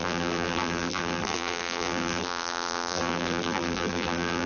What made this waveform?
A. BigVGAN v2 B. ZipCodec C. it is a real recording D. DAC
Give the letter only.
A